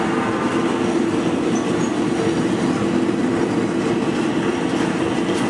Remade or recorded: recorded